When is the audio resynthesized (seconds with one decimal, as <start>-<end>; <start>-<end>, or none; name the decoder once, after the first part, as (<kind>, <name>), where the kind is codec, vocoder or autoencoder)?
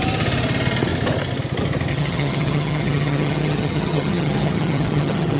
1.9-5.4 (vocoder, HiFi-GAN)